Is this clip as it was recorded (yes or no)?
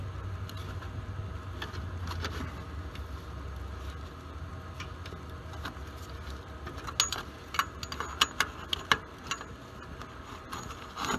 yes